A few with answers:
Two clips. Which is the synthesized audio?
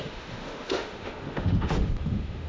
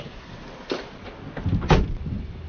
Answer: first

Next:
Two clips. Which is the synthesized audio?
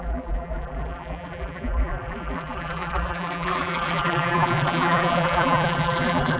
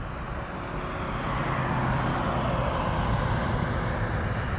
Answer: first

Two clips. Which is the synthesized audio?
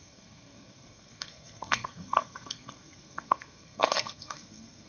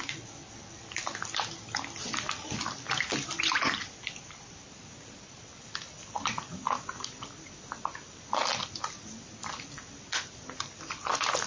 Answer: first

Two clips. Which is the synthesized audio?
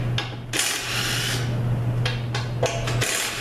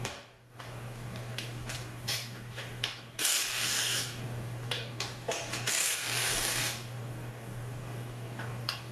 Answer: second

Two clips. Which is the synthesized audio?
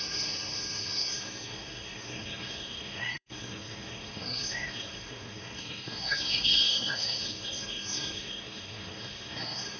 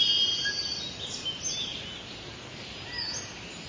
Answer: first